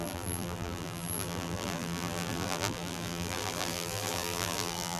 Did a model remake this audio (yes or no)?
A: yes